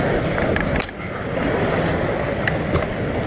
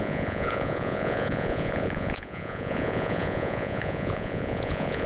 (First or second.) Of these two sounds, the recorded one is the first